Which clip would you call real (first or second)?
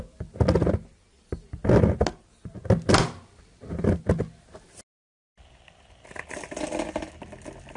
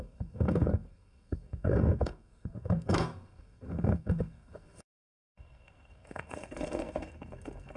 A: first